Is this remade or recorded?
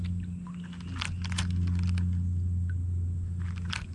recorded